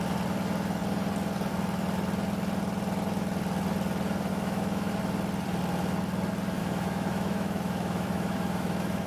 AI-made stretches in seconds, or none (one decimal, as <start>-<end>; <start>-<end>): 4.3-4.9; 6.6-9.1